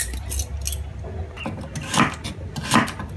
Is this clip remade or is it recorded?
recorded